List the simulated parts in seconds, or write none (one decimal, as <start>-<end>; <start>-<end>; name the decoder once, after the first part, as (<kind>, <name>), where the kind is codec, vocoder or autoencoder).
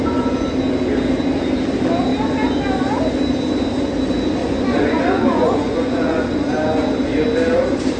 4.4-6.5 (vocoder, Vocos)